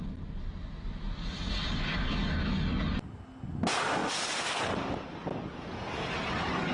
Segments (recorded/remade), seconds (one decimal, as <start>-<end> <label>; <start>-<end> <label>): 0.0-4.0 recorded; 4.0-4.7 remade; 4.7-6.7 recorded